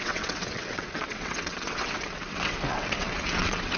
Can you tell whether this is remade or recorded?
remade